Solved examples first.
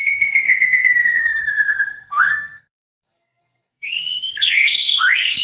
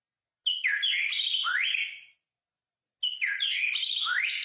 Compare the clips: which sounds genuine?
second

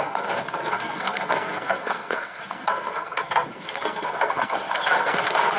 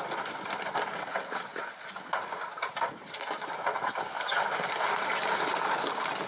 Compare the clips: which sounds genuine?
second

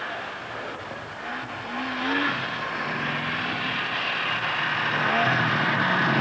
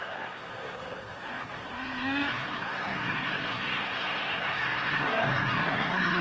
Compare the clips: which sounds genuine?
first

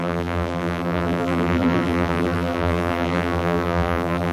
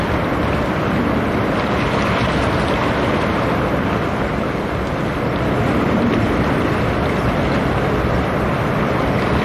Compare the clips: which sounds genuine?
second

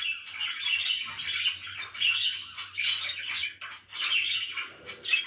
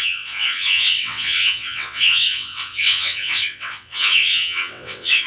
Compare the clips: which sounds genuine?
first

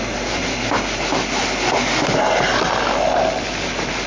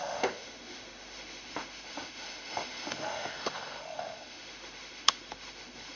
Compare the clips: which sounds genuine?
first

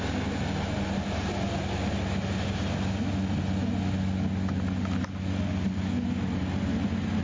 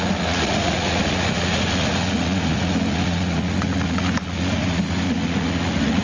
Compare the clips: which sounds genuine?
first